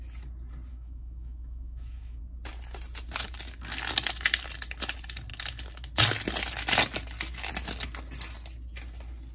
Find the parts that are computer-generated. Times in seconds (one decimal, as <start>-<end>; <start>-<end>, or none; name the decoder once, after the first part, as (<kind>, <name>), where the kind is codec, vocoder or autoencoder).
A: 0.7-2.2 (autoencoder, DAC-VAE)